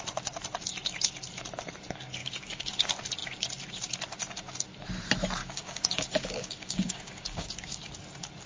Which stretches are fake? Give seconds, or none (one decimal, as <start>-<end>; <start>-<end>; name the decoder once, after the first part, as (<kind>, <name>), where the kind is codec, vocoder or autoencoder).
2.2-2.7 (codec, DAC); 5.4-7.8